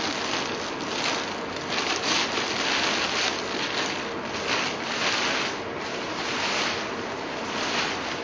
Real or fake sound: real